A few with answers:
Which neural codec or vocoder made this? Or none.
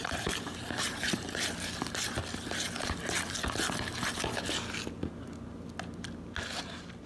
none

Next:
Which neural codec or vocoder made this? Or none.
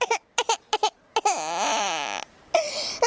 vocoder, BigVGAN v2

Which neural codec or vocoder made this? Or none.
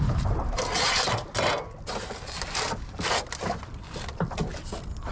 none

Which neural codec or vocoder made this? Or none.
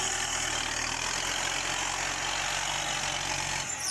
none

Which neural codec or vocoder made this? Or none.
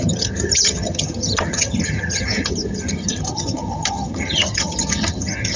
vocoder, HiFi-GAN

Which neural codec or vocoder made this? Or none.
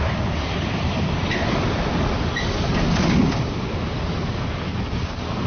none